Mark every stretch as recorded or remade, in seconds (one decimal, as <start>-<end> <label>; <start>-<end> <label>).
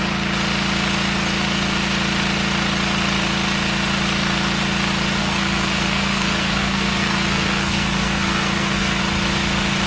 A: 0.0-5.2 recorded; 5.2-9.0 remade; 9.0-9.9 recorded